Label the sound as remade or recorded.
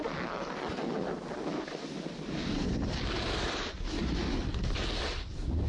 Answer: recorded